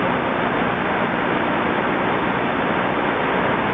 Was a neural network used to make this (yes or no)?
no